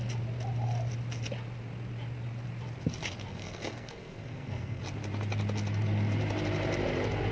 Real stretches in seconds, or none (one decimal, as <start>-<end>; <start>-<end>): 0.0-3.3; 4.8-7.3